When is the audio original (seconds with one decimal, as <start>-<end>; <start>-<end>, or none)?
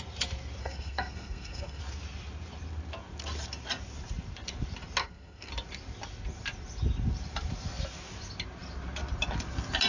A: 0.0-0.6; 1.8-5.0; 5.5-9.9